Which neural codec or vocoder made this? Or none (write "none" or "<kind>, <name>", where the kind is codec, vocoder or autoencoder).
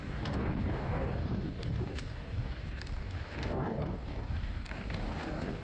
codec, DAC